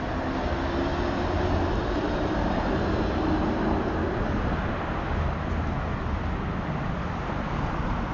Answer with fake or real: real